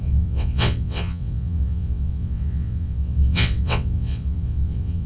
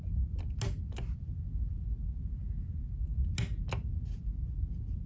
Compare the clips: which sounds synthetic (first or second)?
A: first